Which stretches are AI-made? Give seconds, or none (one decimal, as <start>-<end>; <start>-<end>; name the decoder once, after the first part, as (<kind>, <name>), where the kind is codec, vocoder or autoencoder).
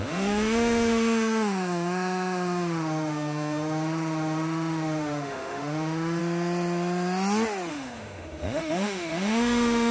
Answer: 0.0-6.2 (autoencoder, DAC-VAE); 7.7-9.9